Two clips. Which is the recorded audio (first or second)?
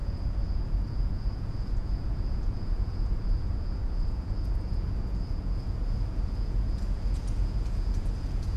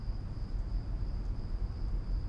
second